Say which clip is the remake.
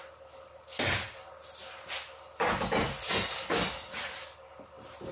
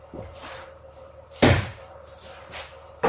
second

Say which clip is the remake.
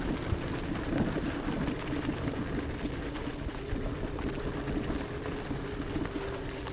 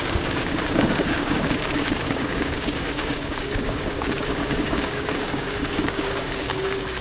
second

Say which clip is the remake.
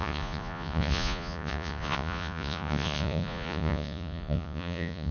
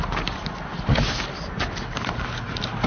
first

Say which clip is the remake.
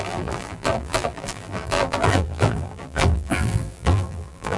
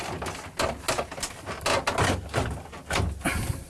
first